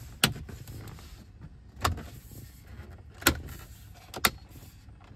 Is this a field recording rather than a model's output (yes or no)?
yes